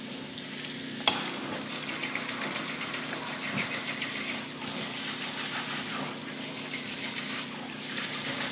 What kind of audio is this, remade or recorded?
recorded